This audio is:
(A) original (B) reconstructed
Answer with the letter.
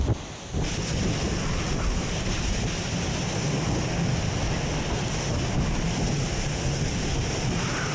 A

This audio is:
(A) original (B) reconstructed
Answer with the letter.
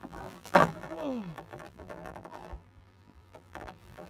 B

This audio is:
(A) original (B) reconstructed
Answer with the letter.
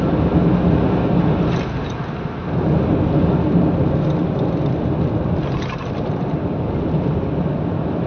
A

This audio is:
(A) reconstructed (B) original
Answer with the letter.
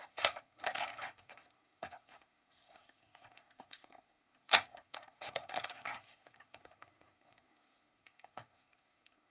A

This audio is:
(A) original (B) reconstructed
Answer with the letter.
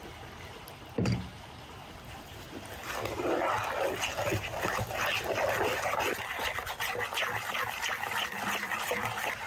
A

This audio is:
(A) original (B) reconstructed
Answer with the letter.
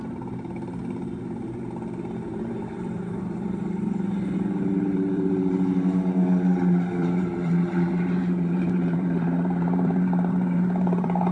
B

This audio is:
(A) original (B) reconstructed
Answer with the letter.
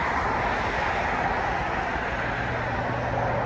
A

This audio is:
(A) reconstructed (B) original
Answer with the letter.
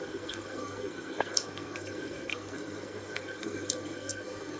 A